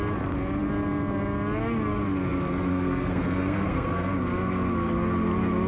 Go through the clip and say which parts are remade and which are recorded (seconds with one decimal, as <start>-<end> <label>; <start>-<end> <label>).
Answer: 0.0-2.7 recorded; 2.7-4.1 remade; 4.1-5.7 recorded